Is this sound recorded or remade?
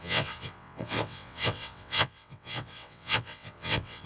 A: remade